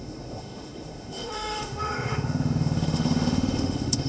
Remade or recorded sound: remade